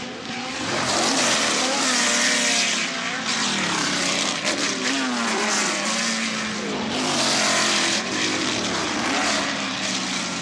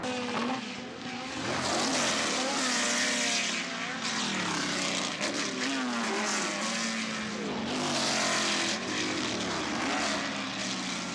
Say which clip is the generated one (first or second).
first